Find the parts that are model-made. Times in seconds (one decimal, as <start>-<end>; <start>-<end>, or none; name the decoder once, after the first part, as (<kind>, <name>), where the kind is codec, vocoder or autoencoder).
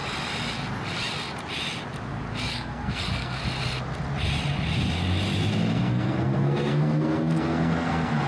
2.5-3.4 (codec, SNAC); 5.6-8.3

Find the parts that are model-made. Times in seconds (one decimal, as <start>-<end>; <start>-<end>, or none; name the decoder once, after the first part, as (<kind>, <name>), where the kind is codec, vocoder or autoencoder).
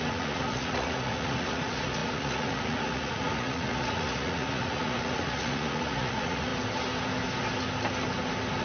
0.0-6.5 (vocoder, Vocos)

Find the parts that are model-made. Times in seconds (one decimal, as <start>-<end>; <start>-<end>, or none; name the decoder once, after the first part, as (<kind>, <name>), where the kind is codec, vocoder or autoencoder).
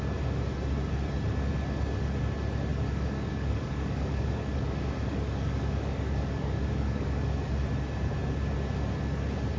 2.7-7.5 (codec, DAC)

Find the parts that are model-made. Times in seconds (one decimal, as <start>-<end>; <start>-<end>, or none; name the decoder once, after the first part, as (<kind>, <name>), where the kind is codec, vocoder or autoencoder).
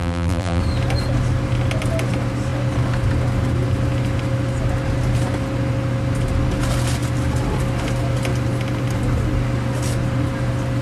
0.0-0.6 (vocoder, BigVGAN v2)